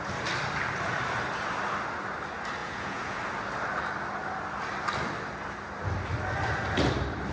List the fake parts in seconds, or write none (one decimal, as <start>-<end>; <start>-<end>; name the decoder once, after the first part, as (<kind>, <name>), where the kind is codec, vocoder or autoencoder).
2.6-3.2 (vocoder, Vocos)